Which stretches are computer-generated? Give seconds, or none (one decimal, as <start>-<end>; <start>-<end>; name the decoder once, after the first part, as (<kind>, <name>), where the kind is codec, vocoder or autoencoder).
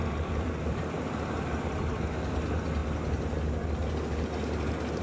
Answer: none